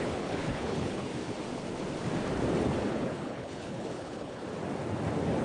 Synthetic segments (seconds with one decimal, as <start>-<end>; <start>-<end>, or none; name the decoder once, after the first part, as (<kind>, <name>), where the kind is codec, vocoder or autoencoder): 0.0-1.1 (codec, HILCodec); 2.9-4.4